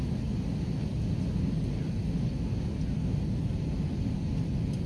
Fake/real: real